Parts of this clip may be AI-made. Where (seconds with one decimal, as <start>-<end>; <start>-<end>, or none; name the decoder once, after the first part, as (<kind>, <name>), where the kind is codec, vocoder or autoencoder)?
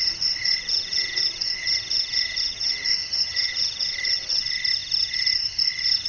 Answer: 3.0-3.5 (vocoder, HiFi-GAN)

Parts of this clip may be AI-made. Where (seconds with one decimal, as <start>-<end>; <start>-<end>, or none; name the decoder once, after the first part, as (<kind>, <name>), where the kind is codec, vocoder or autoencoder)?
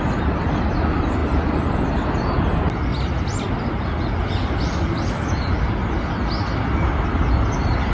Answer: none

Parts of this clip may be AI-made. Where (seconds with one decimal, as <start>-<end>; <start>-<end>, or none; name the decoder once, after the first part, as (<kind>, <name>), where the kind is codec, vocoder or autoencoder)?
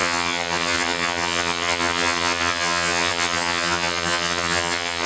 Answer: 0.0-5.1 (vocoder, HiFi-GAN)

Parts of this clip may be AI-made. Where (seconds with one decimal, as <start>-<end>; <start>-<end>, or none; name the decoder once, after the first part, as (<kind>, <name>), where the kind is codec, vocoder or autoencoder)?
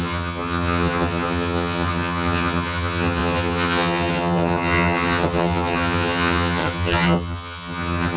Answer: 0.0-8.2 (vocoder, HiFi-GAN)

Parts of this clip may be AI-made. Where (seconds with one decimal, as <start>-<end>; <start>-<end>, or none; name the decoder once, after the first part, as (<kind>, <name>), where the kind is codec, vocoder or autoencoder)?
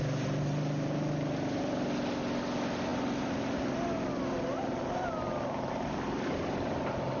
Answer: none